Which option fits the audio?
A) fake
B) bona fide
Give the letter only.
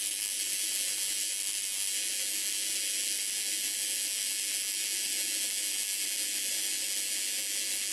B